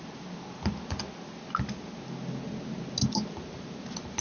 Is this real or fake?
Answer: real